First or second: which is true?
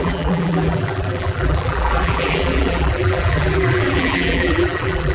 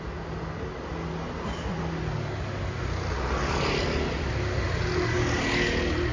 second